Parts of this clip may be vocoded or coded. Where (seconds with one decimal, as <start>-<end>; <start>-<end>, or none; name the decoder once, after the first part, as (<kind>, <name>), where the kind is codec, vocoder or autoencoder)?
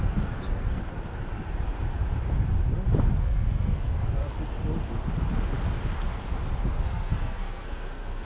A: 0.0-0.8 (codec, SNAC); 3.2-4.2; 6.7-8.2